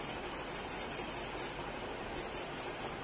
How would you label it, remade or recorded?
recorded